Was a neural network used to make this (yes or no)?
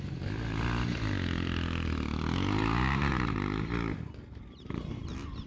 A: no